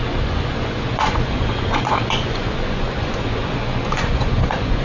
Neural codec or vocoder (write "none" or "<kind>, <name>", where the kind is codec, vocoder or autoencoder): vocoder, Vocos